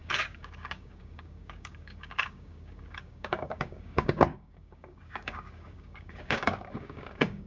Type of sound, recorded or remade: remade